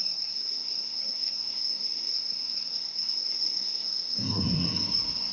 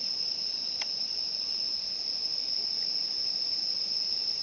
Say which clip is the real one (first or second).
second